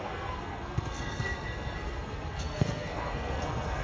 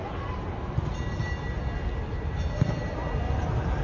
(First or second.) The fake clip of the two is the first